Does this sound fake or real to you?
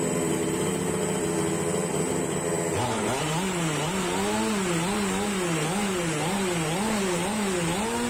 real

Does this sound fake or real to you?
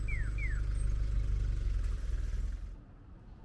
real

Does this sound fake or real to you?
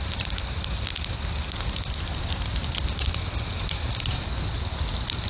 real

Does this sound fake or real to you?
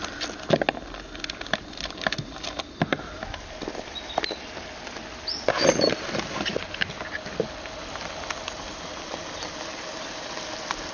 real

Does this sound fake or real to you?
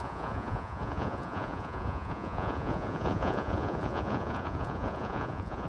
fake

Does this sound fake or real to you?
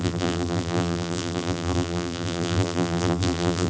fake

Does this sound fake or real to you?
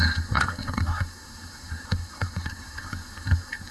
fake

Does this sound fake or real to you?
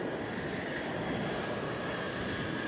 real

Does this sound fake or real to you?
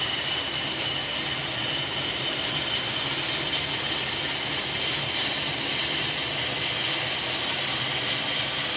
real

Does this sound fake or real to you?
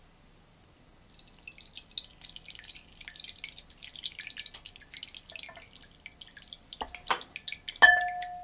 real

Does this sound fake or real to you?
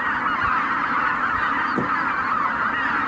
real